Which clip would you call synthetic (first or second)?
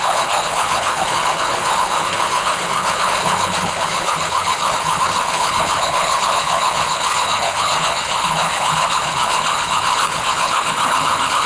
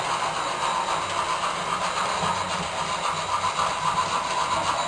first